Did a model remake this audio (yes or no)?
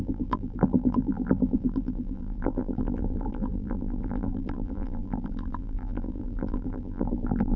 yes